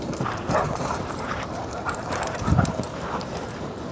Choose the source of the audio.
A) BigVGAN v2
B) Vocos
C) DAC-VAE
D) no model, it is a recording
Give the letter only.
A